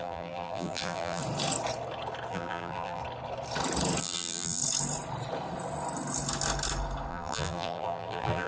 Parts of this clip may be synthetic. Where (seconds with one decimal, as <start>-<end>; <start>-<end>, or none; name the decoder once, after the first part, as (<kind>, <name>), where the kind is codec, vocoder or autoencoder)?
0.0-1.2 (vocoder, BigVGAN v2); 2.3-3.0; 4.0-4.6; 7.1-8.5